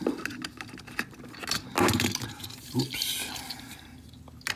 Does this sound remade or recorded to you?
recorded